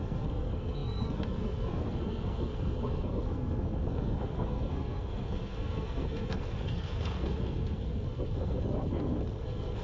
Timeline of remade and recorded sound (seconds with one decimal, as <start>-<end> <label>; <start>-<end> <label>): 0.0-9.8 remade